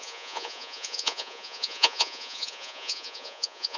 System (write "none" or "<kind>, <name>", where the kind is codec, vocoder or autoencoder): vocoder, Vocos